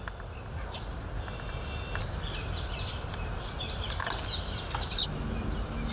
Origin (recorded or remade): recorded